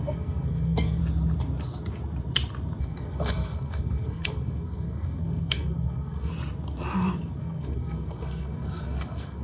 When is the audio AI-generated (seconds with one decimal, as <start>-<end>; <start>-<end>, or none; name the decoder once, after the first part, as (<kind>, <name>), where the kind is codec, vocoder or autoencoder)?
0.0-1.0 (codec, SNAC); 2.8-6.3; 7.4-9.4